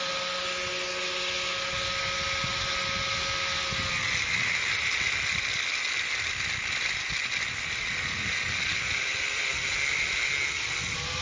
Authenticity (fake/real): real